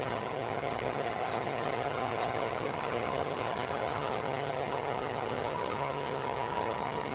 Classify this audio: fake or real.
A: fake